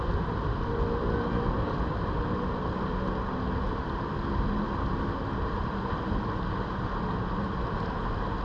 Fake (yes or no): no